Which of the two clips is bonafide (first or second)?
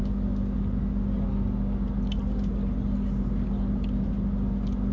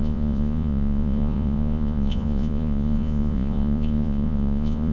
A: first